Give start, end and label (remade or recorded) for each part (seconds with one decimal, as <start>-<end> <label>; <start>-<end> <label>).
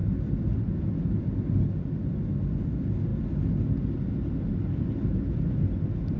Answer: 0.0-6.2 recorded